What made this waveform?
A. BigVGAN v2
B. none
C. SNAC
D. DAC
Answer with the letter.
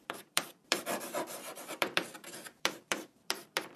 A